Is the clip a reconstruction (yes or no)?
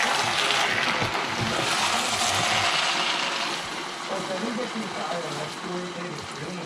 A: no